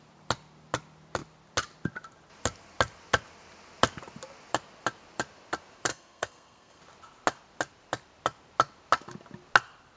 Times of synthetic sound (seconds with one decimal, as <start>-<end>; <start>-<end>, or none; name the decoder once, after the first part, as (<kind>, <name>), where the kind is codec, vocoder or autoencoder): 5.9-6.8 (codec, SNAC)